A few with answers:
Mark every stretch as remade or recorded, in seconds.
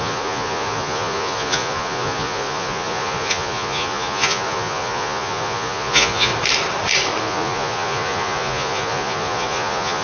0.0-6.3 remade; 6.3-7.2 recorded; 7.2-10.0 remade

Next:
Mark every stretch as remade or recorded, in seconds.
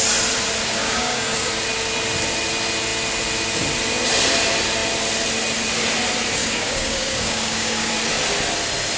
0.0-0.8 recorded; 0.8-1.5 remade; 1.5-6.4 recorded; 6.4-7.9 remade; 7.9-9.0 recorded